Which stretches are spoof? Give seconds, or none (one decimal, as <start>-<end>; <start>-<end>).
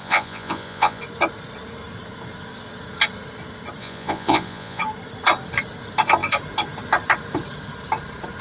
0.0-1.0; 3.8-4.8